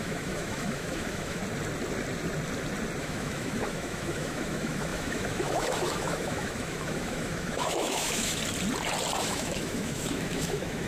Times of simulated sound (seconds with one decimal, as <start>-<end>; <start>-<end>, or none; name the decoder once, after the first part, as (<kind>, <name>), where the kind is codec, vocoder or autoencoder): 0.0-1.4 (autoencoder, DAC-VAE); 3.0-8.4; 9.2-10.9